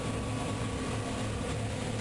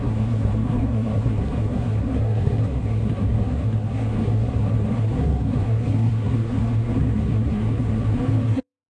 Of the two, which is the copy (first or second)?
second